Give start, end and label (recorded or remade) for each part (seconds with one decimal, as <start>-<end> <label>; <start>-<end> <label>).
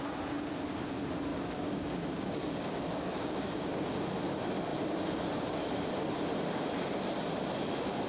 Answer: 0.0-1.3 recorded; 1.3-3.9 remade; 3.9-8.1 recorded